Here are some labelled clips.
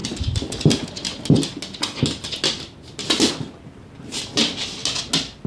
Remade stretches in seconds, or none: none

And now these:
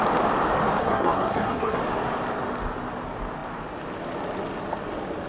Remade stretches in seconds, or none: 0.8-1.8

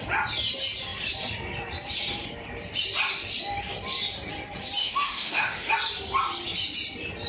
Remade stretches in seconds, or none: 4.8-5.7

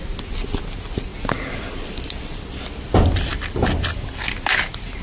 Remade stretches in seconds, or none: 3.3-4.2